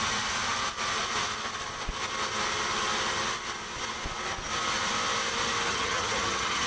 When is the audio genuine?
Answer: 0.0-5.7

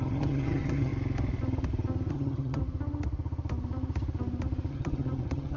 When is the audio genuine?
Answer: 0.9-2.1; 2.6-4.7

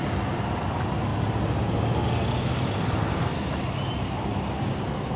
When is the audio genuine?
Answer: 0.0-5.2

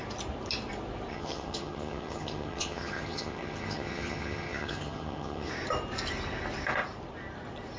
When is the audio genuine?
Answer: 0.0-1.1; 5.5-7.8

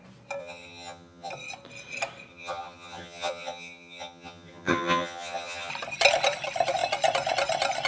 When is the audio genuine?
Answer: 0.0-0.4; 1.3-2.3; 5.7-7.9

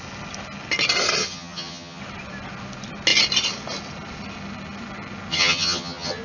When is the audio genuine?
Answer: 0.0-1.2; 2.0-5.3

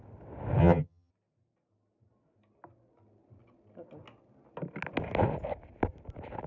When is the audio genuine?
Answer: 0.0-0.6; 1.1-6.5

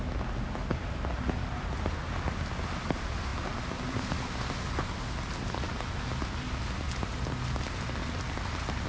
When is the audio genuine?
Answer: 0.0-8.9